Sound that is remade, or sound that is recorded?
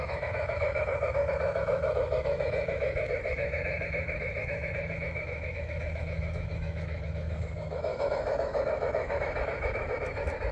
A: remade